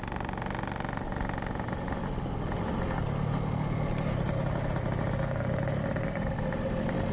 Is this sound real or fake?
real